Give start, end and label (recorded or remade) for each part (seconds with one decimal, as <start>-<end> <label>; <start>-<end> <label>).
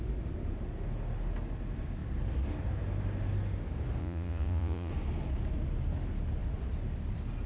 0.0-4.0 recorded; 4.0-4.9 remade; 4.9-7.5 recorded